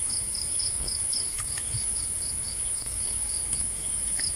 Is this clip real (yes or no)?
no